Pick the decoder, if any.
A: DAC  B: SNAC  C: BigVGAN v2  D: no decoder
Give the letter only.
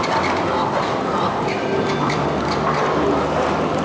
D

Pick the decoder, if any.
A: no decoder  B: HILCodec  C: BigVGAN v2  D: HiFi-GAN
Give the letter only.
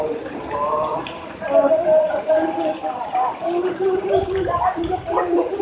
C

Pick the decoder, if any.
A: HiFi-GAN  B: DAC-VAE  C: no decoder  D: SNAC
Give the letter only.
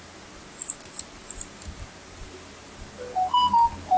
C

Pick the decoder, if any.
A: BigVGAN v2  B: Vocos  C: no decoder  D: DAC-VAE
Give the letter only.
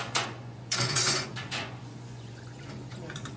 B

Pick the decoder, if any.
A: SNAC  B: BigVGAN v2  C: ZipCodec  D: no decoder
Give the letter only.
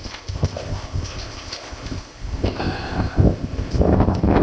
C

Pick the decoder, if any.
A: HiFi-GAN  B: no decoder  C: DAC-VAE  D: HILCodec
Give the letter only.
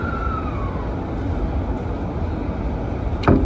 B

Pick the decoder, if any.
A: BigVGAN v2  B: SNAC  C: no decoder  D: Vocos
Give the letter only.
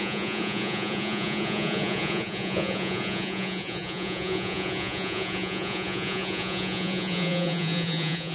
D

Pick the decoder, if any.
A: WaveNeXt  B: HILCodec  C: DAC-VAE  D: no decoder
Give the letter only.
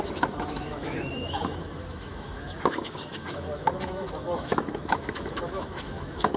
C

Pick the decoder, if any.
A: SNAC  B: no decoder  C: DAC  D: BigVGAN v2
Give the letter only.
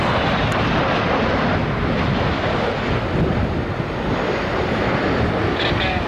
B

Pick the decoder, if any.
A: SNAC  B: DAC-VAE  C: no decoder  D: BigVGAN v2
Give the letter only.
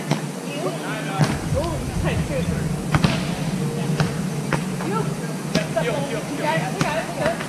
C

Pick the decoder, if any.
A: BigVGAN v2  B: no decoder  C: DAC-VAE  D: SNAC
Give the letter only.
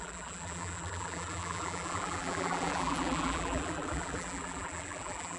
A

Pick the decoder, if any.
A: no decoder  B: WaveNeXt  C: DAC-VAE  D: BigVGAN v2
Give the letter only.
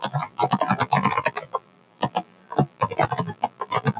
D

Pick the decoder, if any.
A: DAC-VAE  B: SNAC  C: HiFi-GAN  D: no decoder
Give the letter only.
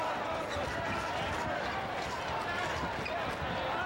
D